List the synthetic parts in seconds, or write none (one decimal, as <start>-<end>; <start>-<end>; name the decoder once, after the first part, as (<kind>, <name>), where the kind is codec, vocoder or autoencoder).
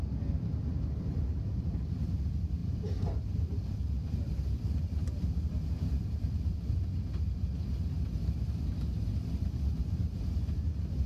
2.6-7.1 (vocoder, BigVGAN v2); 8.9-9.8